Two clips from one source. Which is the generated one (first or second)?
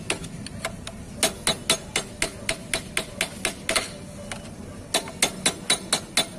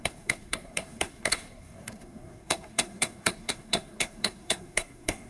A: second